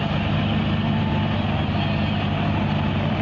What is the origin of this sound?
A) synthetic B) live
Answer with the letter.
B